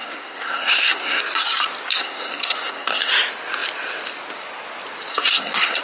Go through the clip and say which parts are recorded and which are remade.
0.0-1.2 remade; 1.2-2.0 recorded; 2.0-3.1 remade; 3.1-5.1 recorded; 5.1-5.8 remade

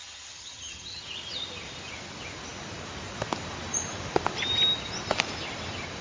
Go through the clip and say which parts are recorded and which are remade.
0.0-1.0 remade; 1.0-6.0 recorded

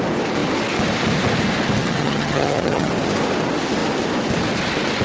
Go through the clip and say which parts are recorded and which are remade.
0.0-1.8 recorded; 1.8-2.9 remade; 2.9-5.0 recorded

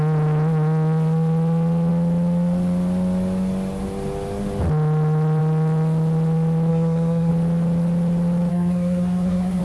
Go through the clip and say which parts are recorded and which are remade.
0.0-6.7 recorded; 6.7-7.3 remade; 7.3-8.5 recorded; 8.5-9.6 remade

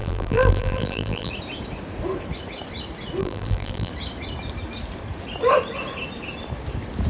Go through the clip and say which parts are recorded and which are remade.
0.0-1.3 remade; 1.3-3.2 recorded; 3.2-3.9 remade; 3.9-7.1 recorded

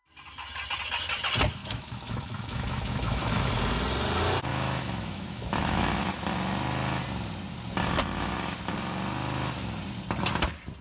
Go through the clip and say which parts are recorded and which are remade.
0.0-1.6 recorded; 1.6-3.5 remade; 3.5-4.5 recorded; 4.5-6.0 remade; 6.0-10.8 recorded

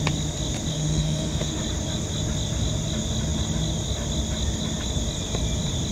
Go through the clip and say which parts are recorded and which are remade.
0.0-0.7 recorded; 0.7-1.6 remade; 1.6-5.9 recorded

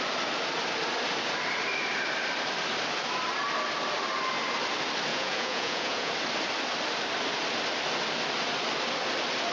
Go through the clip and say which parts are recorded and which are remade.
0.0-5.1 recorded; 5.1-6.1 remade; 6.1-9.5 recorded